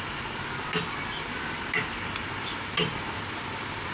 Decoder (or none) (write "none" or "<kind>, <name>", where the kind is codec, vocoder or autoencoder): none